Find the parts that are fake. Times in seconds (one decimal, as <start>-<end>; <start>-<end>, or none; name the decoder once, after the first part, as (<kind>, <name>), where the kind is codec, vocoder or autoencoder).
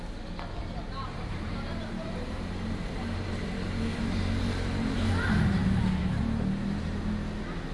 0.6-5.1 (vocoder, BigVGAN v2)